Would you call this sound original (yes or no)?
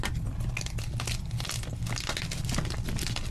yes